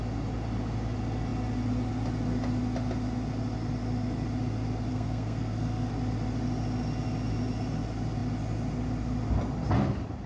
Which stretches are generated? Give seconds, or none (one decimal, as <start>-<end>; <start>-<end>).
4.9-5.9